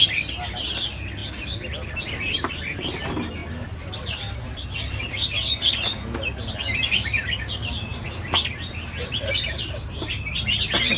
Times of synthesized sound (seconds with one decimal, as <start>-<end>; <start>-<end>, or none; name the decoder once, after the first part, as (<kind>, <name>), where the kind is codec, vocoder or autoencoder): none